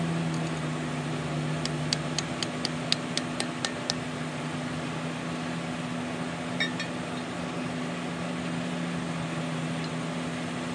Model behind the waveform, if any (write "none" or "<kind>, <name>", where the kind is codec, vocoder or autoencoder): none